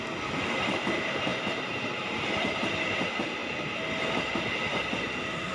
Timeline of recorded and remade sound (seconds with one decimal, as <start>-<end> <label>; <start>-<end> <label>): 0.0-1.3 recorded; 1.3-2.7 remade; 2.7-5.5 recorded

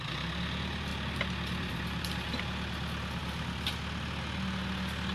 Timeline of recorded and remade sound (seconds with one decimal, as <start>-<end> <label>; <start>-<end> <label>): 0.0-0.9 recorded; 0.9-2.4 remade; 2.4-3.2 recorded; 3.2-3.7 remade; 3.7-5.1 recorded